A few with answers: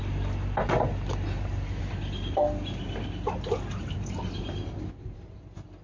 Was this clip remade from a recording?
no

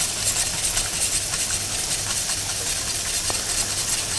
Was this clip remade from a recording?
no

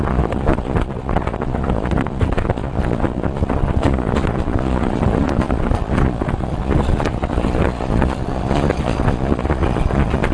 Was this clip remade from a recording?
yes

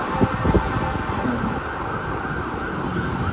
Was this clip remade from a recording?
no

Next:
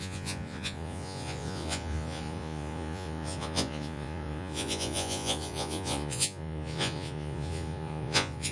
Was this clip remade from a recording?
yes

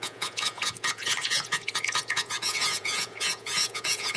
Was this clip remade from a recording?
yes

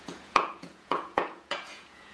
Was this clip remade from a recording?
yes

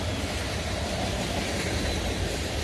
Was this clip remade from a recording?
no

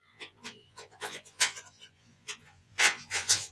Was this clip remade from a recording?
yes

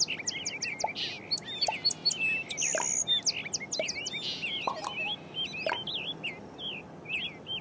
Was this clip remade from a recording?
no